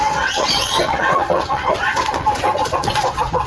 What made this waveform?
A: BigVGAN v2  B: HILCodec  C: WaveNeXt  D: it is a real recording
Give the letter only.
C